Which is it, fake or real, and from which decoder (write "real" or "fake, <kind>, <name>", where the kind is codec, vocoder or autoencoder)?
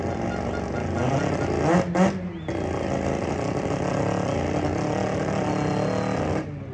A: real